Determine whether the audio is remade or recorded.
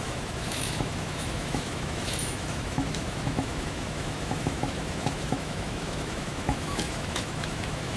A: remade